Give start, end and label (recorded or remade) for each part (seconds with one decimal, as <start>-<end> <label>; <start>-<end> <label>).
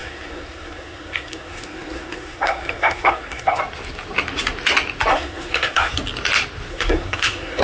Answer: 0.0-3.6 remade; 3.6-5.1 recorded; 5.1-5.9 remade; 5.9-6.7 recorded; 6.7-7.6 remade